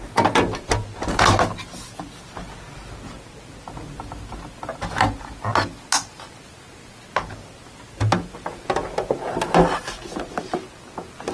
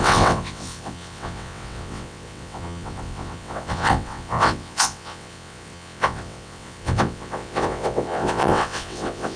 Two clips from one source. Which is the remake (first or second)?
second